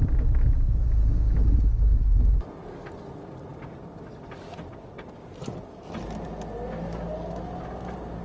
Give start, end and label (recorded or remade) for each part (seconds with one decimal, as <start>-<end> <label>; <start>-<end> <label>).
0.0-8.2 recorded